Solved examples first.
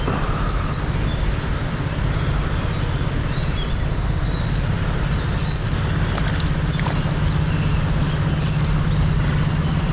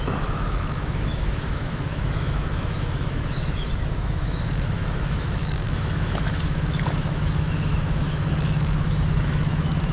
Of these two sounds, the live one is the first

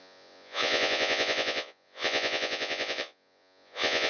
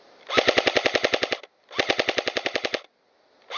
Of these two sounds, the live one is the second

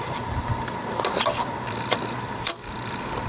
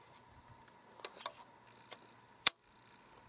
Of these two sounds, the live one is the second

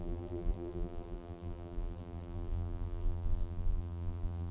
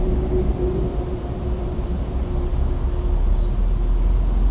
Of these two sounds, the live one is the second